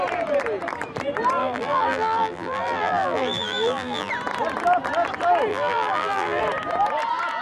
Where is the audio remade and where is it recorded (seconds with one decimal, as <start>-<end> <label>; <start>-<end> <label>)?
0.0-1.4 recorded; 1.4-4.1 remade; 4.1-5.5 recorded; 5.5-6.4 remade; 6.4-7.4 recorded